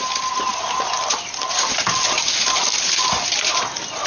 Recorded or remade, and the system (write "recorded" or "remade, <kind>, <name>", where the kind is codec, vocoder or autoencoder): recorded